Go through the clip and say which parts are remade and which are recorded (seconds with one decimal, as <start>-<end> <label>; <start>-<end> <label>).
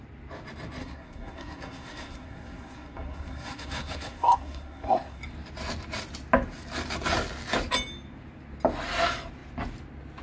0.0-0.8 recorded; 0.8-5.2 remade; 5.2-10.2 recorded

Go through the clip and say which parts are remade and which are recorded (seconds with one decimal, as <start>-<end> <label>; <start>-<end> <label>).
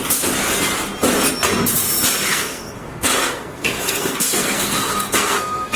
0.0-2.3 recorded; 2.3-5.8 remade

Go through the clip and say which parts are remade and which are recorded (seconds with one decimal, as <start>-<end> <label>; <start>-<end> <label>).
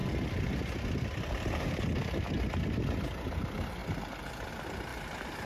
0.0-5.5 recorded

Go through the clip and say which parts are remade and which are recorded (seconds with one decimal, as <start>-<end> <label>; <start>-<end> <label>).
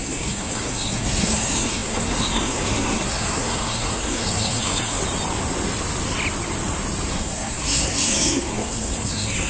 0.0-5.0 remade; 5.0-7.1 recorded; 7.1-9.5 remade